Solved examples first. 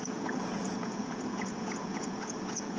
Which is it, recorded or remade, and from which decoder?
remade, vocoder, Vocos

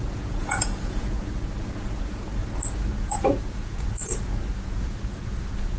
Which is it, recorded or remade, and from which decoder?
remade, vocoder, Vocos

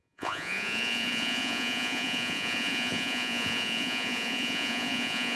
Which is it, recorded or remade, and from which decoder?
remade, vocoder, Vocos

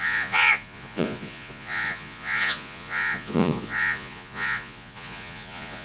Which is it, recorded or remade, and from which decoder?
remade, vocoder, Vocos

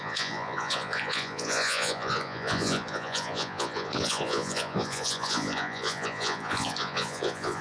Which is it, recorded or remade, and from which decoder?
remade, vocoder, Vocos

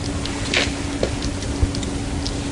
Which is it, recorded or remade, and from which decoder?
recorded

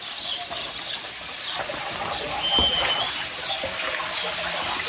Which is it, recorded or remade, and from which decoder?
recorded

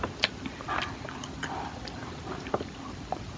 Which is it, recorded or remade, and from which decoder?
recorded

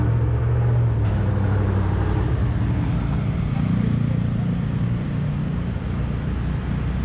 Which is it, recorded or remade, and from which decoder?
recorded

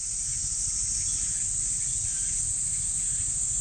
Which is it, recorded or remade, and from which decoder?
recorded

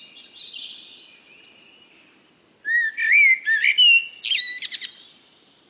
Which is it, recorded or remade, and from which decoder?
recorded